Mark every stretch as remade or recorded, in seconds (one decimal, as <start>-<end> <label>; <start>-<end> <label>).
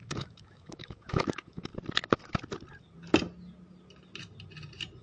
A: 0.0-1.7 remade; 1.7-5.0 recorded